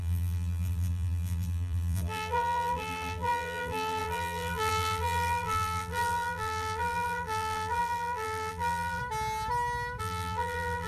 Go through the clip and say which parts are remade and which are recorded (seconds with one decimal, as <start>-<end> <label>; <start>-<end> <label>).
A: 0.0-9.0 remade; 9.0-10.0 recorded; 10.0-10.9 remade